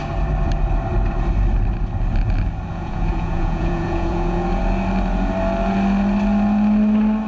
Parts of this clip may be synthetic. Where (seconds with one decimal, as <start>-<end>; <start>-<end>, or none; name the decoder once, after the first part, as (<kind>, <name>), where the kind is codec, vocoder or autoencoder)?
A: 2.7-4.6 (vocoder, Vocos)

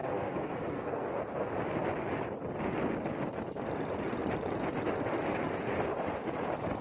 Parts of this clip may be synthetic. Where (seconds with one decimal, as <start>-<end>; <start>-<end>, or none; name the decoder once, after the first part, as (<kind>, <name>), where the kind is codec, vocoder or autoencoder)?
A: 0.0-1.1 (codec, SNAC)

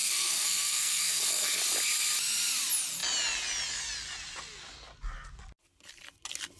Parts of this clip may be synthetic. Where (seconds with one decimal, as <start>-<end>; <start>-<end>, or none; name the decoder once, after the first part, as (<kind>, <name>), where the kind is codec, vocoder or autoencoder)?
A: 0.0-1.6 (codec, SNAC)

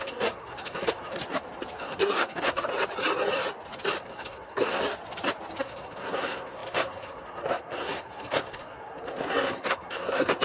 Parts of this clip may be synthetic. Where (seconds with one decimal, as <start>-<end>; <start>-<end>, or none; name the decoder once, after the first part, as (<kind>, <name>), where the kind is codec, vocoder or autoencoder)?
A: 0.0-1.2 (codec, SNAC); 1.8-2.7; 4.0-4.8; 5.6-10.4

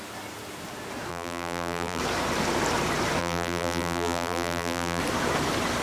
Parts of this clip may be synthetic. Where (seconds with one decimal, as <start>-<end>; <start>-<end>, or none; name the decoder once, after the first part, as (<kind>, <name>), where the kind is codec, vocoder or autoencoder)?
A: 1.1-2.0 (vocoder, BigVGAN v2); 3.2-5.0

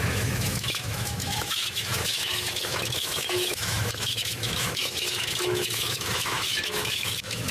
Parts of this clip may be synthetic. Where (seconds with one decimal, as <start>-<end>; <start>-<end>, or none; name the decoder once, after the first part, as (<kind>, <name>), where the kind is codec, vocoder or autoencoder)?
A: 0.0-7.5 (autoencoder, DAC-VAE)